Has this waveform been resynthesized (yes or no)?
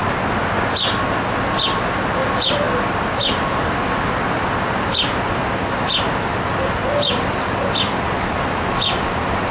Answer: no